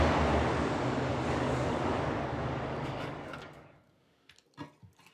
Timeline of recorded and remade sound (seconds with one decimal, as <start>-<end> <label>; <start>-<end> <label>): 0.0-1.1 recorded; 1.1-4.2 remade; 4.2-5.1 recorded